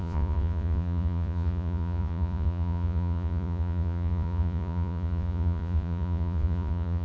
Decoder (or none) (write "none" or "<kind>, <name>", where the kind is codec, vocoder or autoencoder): vocoder, Vocos